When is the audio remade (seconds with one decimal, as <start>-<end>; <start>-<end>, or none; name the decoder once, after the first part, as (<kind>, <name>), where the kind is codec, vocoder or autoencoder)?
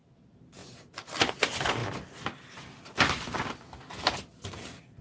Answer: 0.6-1.3 (vocoder, BigVGAN v2)